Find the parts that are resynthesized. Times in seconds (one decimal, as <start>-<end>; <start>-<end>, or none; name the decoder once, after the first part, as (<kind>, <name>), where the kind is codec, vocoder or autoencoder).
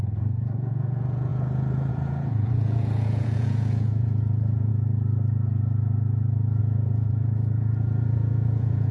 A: 0.0-4.7 (vocoder, Vocos); 6.6-8.9